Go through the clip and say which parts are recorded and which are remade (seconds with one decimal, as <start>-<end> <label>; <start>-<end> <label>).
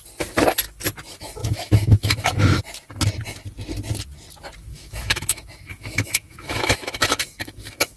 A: 0.0-1.4 recorded; 1.4-2.6 remade; 2.6-4.7 recorded; 4.7-8.0 remade